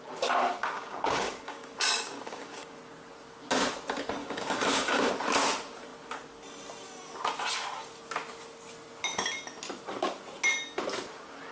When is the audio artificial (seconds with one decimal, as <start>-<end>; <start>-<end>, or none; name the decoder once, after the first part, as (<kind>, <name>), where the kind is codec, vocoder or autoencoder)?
0.6-2.8 (codec, DAC); 4.2-5.1